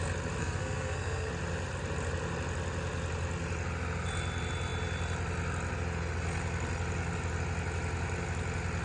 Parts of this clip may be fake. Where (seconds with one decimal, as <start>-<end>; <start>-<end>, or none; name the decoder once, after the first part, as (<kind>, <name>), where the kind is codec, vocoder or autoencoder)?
0.4-1.3 (codec, SNAC)

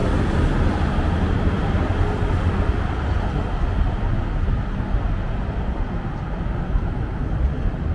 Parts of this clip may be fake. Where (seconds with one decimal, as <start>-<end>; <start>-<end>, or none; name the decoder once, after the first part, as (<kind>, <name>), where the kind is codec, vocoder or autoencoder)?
none

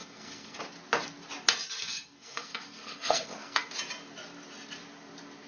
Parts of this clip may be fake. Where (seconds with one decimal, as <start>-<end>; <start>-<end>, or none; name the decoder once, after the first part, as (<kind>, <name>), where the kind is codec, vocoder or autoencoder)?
0.0-0.6 (codec, SNAC); 1.7-3.7